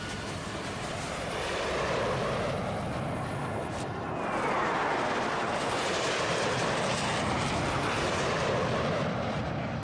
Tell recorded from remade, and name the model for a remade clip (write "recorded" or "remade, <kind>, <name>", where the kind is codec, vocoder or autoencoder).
remade, vocoder, BigVGAN v2